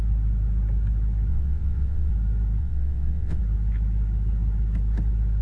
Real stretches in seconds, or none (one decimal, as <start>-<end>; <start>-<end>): 0.0-1.3; 2.1-2.6; 3.4-5.4